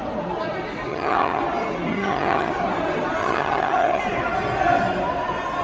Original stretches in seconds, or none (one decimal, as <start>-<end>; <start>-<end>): 0.0-0.9; 1.4-1.9; 2.5-3.2; 4.0-5.6